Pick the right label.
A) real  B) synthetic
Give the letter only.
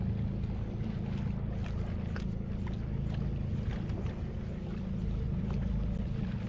A